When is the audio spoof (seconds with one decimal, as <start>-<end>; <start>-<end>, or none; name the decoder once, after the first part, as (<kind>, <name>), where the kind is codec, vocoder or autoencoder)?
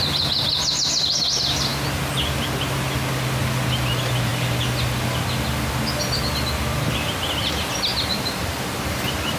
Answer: 8.1-9.4 (vocoder, BigVGAN v2)